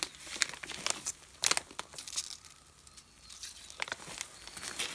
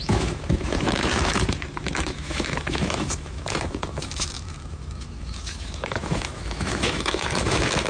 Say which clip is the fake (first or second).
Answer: second